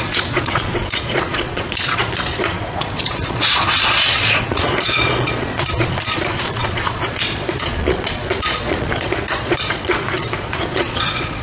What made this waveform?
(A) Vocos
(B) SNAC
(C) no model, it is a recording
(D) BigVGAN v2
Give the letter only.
A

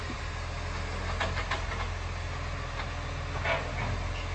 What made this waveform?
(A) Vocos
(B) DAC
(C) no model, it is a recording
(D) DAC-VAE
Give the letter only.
C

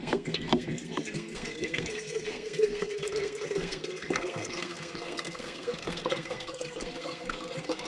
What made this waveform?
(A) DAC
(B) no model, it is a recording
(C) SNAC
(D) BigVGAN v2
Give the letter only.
C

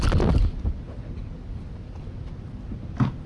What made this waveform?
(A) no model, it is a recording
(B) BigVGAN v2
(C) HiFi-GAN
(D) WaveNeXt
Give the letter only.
A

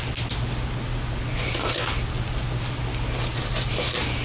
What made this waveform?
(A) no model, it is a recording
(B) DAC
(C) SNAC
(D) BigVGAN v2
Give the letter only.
A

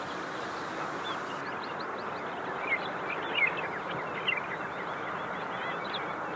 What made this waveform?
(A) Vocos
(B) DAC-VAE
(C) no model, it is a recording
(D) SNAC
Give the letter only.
C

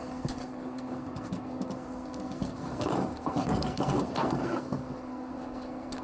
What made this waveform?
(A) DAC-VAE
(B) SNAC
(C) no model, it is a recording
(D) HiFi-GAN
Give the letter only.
B